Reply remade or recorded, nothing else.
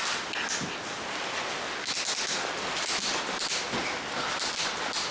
recorded